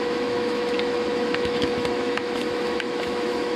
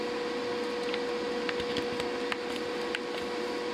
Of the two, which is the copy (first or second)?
first